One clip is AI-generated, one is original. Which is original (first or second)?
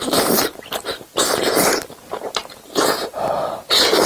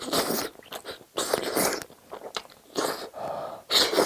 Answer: second